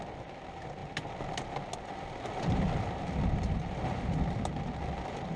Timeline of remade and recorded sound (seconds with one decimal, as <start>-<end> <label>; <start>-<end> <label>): 0.0-5.4 recorded